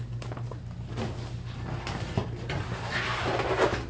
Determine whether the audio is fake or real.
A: fake